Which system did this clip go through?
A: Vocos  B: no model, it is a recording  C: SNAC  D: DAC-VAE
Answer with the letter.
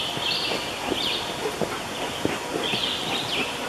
B